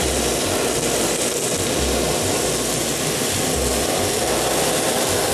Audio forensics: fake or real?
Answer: real